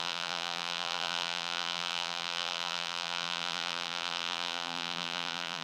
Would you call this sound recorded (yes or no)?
no